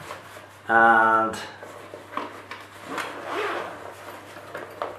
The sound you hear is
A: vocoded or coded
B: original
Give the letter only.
B